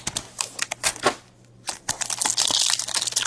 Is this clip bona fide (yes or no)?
yes